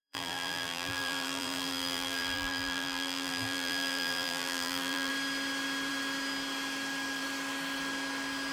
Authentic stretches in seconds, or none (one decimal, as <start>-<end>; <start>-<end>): 5.1-8.5